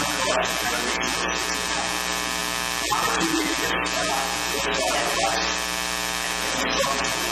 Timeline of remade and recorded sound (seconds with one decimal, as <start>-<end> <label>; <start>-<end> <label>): 0.0-7.3 recorded